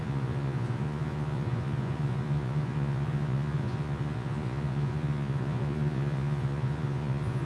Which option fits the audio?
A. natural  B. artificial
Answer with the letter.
B